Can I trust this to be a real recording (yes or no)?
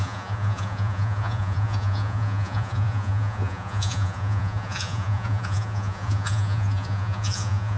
no